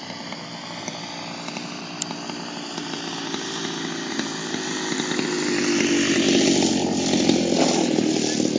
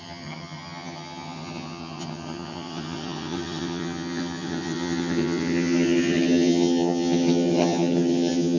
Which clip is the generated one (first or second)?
second